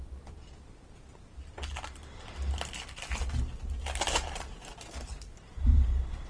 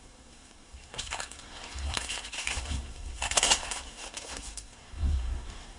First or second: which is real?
first